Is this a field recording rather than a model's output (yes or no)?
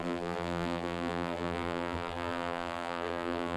no